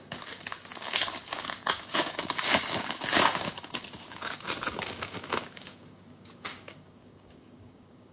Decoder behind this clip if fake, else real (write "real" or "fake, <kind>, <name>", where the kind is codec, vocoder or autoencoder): fake, codec, DAC